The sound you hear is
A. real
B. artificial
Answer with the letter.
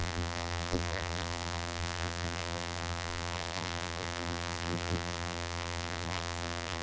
B